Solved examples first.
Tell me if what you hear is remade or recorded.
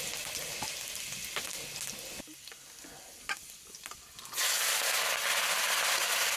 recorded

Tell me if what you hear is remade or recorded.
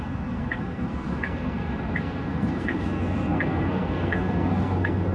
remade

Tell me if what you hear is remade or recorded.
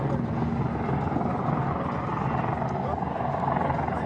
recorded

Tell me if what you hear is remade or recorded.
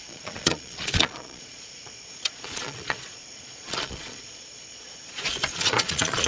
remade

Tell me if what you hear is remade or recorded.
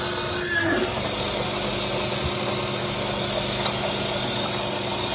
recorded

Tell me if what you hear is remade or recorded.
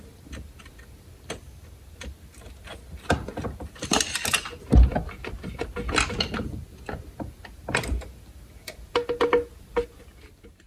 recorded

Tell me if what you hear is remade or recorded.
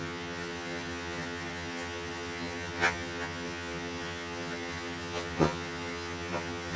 remade